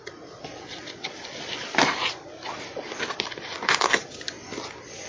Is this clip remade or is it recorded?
recorded